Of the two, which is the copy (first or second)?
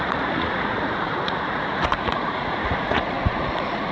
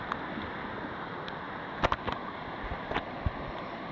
first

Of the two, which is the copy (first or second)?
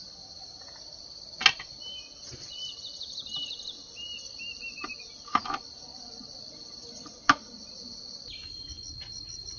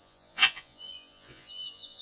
second